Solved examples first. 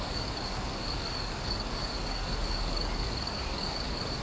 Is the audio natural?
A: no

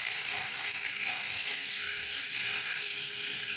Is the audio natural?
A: no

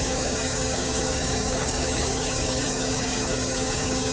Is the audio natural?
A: no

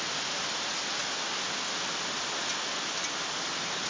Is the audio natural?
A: yes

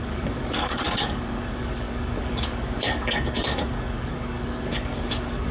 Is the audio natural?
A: no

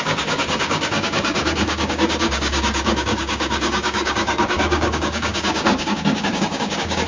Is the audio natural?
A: no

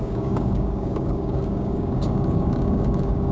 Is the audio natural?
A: no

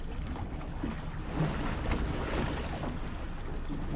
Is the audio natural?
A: yes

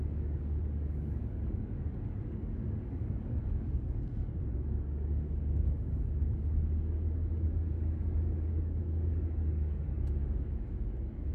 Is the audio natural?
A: no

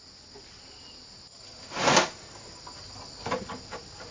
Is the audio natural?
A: yes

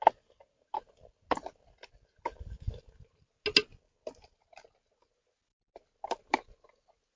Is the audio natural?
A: yes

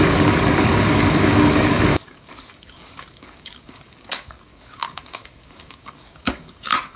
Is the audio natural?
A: no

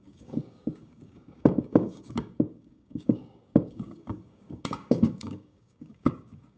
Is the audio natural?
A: no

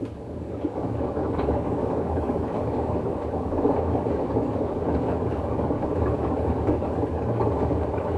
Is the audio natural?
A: no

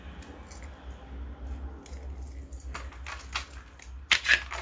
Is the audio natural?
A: yes